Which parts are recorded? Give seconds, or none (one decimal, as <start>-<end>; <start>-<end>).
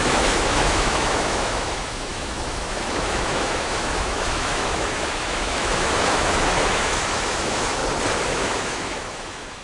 7.8-8.3